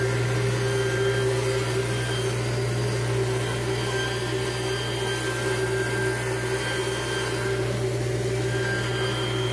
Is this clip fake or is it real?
real